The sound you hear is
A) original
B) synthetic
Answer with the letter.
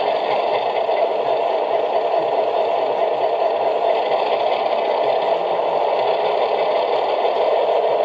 A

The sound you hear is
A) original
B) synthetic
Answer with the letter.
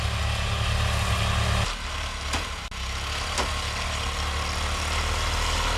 A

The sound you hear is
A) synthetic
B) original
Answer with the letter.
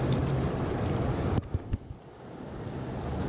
B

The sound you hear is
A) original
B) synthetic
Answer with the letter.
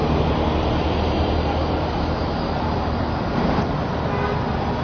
A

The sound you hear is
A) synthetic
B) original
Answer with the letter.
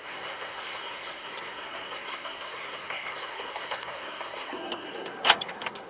A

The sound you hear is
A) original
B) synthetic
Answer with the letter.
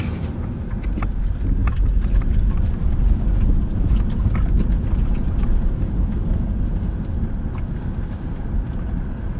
A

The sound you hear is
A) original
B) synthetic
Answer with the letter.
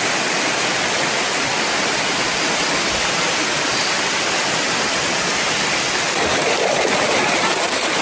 A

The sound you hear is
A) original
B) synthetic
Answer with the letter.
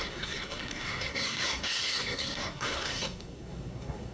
B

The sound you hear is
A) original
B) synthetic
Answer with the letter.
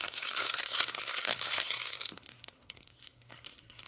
B